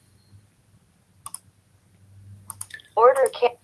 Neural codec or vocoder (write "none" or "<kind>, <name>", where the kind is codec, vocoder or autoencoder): none